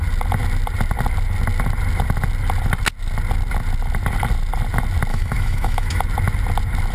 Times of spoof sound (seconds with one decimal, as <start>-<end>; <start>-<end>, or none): 5.1-6.0